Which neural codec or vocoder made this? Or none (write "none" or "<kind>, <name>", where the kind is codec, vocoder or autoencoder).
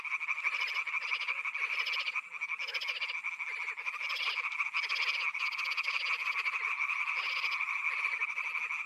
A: none